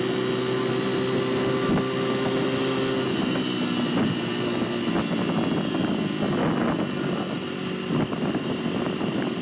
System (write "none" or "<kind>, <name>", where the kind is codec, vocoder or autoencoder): none